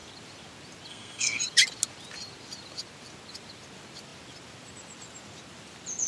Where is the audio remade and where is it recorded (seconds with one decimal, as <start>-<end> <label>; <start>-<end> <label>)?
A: 0.0-0.9 recorded; 0.9-1.4 remade; 1.4-6.1 recorded

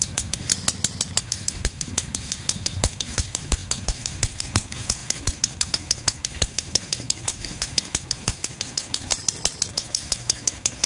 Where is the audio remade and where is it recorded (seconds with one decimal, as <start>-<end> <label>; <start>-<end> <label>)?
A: 0.0-0.5 remade; 0.5-1.2 recorded; 1.2-9.1 remade; 9.1-9.7 recorded; 9.7-10.9 remade